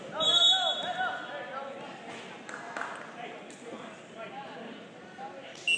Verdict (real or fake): real